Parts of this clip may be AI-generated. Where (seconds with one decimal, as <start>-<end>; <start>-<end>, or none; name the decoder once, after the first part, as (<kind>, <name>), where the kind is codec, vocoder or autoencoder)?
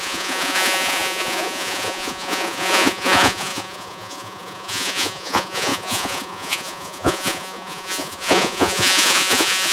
0.0-9.7 (vocoder, Vocos)